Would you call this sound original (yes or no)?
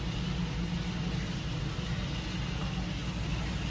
yes